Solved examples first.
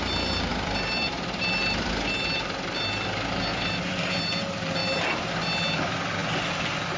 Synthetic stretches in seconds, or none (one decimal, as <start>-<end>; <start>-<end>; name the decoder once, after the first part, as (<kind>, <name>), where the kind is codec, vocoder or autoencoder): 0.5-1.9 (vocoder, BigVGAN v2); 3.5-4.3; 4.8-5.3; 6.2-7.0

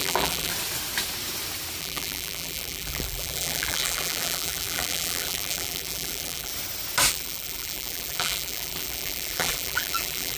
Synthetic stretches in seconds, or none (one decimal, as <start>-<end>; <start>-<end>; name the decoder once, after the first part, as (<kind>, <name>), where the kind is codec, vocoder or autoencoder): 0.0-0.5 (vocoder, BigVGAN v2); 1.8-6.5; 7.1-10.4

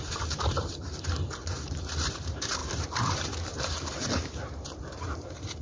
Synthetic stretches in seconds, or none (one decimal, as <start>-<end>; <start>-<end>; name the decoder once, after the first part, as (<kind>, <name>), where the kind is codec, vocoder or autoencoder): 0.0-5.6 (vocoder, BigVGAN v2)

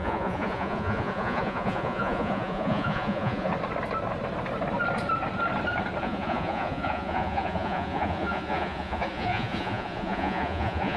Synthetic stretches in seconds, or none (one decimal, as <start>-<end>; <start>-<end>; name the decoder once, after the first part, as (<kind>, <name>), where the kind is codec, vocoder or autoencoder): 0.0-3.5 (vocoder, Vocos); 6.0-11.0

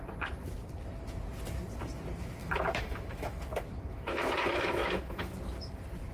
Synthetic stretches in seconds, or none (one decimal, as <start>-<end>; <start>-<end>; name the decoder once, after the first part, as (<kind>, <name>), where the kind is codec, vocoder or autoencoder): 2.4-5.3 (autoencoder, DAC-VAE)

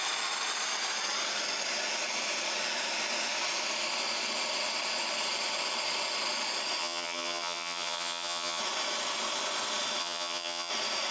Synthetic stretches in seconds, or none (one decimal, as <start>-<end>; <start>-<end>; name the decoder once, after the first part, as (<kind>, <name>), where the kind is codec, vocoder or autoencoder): 6.8-8.6 (vocoder, HiFi-GAN); 10.0-10.7

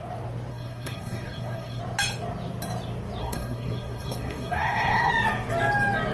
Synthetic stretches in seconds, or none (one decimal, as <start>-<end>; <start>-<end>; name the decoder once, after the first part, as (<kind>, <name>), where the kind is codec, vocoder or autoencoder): 0.5-1.8 (codec, SNAC); 3.2-5.1

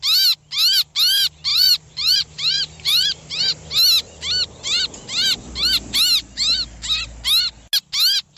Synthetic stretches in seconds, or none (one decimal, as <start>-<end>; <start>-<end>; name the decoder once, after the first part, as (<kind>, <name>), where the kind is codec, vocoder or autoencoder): 1.5-3.5 (vocoder, BigVGAN v2)